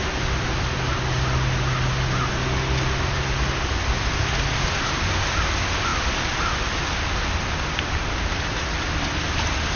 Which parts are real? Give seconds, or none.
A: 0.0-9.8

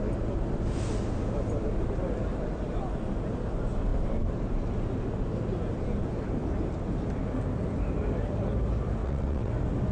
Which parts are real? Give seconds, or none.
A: 0.0-9.0; 9.5-9.9

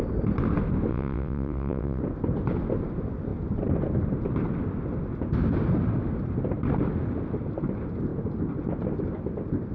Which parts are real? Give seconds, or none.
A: 0.0-0.9; 2.0-9.7